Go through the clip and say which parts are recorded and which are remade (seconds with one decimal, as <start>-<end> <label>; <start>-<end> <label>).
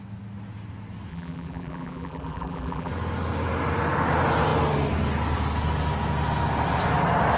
0.0-1.1 recorded; 1.1-2.9 remade; 2.9-7.4 recorded